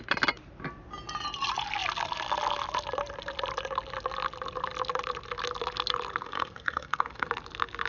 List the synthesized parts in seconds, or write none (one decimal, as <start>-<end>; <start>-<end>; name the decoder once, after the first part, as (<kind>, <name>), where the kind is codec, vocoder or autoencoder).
6.2-7.3 (codec, SNAC)